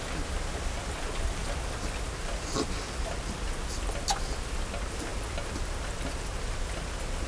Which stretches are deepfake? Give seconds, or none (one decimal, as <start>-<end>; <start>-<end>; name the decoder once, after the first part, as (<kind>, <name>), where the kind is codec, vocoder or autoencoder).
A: none